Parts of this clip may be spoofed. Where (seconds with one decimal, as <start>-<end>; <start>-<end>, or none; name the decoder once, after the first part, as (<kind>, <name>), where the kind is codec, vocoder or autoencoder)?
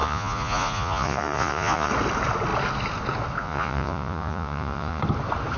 0.0-1.9 (vocoder, Vocos); 3.4-5.0